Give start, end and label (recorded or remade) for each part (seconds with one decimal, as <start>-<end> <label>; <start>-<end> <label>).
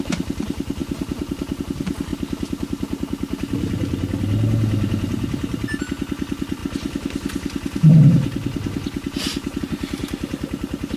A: 0.0-2.1 remade; 2.1-5.8 recorded; 5.8-6.6 remade; 6.6-9.6 recorded; 9.6-11.0 remade